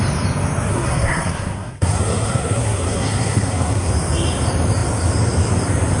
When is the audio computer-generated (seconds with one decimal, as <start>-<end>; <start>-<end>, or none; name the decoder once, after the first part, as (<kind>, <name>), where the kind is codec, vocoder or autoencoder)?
0.7-3.9 (codec, SNAC)